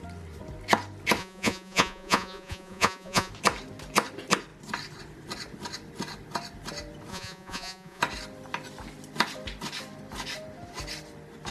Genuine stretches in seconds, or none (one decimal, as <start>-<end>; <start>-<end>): 0.0-1.2; 3.3-7.1; 8.0-11.5